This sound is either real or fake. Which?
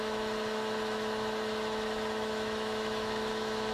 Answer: fake